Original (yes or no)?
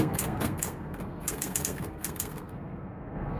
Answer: no